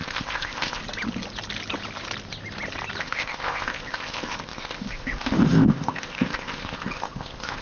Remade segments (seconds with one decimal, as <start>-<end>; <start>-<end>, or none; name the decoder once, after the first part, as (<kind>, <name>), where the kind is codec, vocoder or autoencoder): 0.0-0.8 (codec, ZipCodec); 3.0-7.6